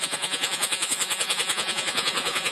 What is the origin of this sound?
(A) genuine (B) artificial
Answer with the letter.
B